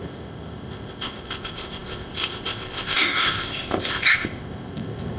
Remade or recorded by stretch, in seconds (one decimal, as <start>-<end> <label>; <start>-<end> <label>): 0.0-5.2 remade